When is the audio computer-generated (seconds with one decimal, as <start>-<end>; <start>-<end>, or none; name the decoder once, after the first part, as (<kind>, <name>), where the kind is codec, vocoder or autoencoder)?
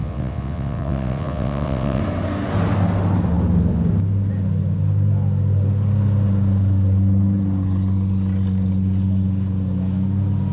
0.0-2.0 (vocoder, WaveNeXt)